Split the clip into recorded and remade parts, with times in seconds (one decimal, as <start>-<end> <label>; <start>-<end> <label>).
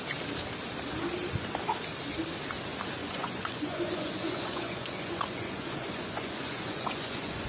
0.0-3.0 recorded; 3.0-7.5 remade